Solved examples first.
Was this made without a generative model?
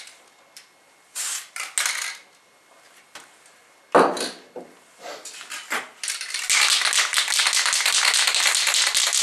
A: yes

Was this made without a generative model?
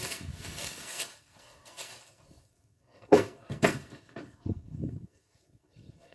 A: no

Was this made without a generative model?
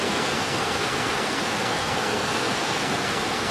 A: no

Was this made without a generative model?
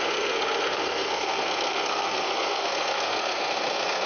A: no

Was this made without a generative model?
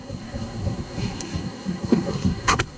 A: no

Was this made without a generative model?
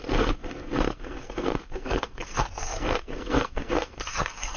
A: no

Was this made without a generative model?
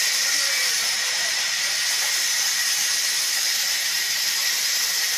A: yes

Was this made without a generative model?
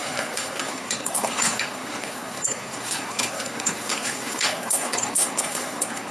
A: no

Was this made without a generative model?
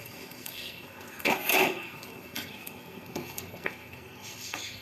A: no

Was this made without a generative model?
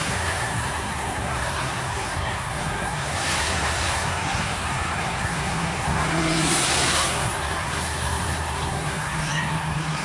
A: no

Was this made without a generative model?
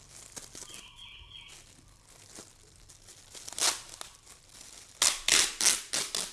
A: yes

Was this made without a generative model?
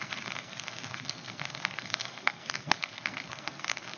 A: no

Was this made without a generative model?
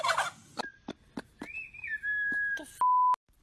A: yes